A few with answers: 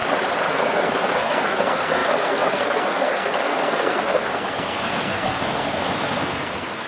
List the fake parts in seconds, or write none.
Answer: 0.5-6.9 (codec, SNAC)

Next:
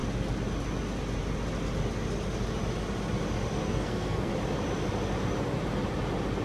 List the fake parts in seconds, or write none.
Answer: 3.6-4.3 (codec, SNAC)